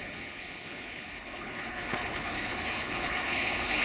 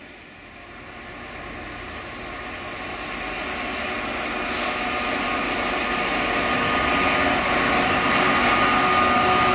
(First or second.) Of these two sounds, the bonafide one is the second